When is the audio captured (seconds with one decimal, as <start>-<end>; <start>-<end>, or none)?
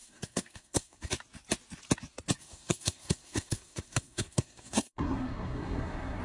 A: 1.1-2.4